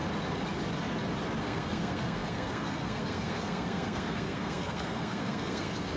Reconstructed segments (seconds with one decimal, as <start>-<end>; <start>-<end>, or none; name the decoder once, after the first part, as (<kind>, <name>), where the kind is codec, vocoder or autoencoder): 1.4-6.0 (codec, SNAC)